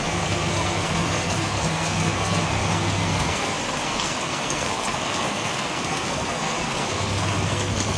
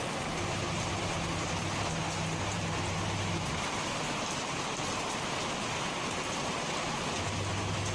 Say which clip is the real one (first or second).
second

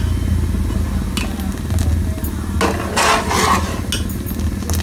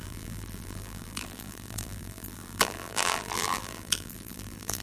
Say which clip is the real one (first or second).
first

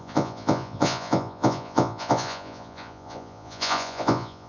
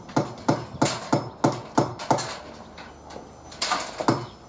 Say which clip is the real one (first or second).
second